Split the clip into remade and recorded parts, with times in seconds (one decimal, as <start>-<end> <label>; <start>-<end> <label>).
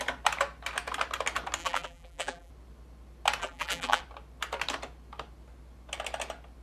0.0-1.6 recorded; 1.6-2.5 remade; 2.5-3.4 recorded; 3.4-4.0 remade; 4.0-6.6 recorded